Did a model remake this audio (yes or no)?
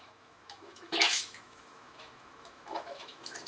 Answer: yes